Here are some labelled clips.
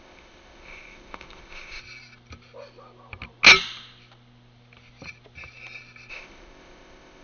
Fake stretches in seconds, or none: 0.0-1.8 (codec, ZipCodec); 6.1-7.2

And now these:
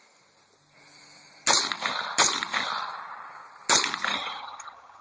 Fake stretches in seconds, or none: 4.1-5.0 (vocoder, HiFi-GAN)

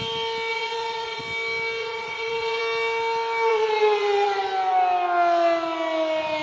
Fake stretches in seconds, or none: 0.5-1.2 (vocoder, WaveNeXt); 1.8-2.6; 3.5-4.4

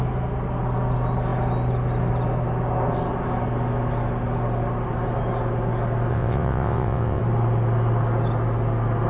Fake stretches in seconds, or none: 6.1-7.2 (vocoder, WaveNeXt)

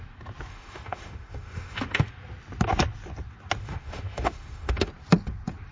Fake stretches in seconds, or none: 0.5-2.1 (autoencoder, DAC-VAE); 3.6-4.9

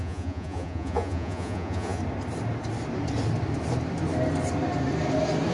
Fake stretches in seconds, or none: 0.0-2.0 (vocoder, Vocos)

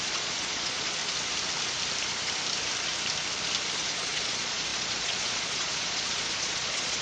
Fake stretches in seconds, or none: 0.0-1.0 (vocoder, Vocos); 3.7-7.0

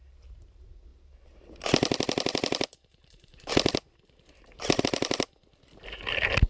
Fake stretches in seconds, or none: none